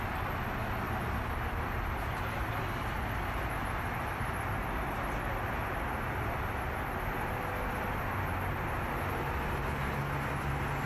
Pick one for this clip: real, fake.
real